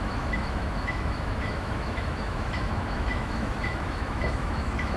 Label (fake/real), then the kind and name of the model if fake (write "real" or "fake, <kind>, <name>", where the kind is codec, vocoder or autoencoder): fake, autoencoder, DAC-VAE